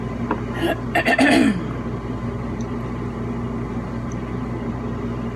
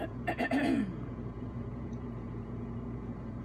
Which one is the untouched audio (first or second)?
first